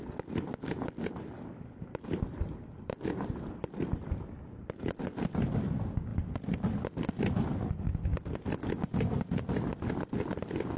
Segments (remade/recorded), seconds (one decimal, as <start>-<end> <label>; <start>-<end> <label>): 0.0-10.8 recorded